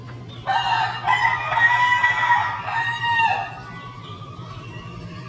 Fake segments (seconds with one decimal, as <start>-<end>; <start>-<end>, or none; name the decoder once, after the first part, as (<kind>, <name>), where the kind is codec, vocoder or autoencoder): none